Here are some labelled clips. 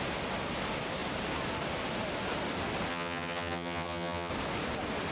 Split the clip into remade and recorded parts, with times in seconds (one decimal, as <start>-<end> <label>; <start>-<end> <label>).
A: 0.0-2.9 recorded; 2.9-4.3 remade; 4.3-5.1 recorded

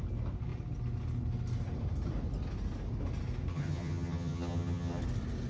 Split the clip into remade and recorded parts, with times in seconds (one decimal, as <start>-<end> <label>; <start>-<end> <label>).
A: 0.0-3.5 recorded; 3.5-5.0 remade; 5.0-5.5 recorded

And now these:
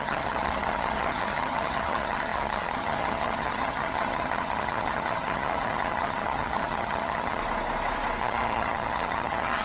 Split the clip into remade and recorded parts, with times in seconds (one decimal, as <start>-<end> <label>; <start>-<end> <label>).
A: 0.0-7.4 remade; 7.4-8.2 recorded; 8.2-9.6 remade